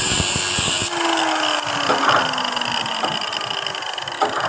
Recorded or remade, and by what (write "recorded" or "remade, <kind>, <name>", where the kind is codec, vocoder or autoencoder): recorded